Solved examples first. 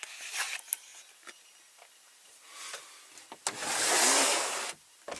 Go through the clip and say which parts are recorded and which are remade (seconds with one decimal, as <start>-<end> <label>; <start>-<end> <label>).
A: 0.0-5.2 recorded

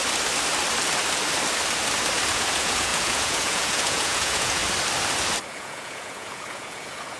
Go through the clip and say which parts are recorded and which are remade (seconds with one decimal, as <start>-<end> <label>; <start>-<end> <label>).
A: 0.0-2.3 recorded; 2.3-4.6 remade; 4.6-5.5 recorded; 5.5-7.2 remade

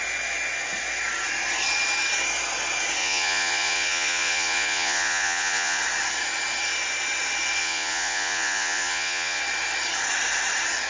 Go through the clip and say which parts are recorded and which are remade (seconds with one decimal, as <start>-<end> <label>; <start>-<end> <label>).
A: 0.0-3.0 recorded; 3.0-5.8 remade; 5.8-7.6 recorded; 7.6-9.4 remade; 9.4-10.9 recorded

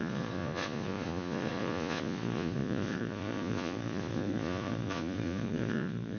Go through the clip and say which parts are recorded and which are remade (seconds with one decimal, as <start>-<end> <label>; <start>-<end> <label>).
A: 0.0-6.2 remade